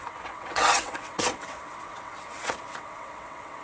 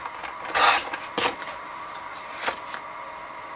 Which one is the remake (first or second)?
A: first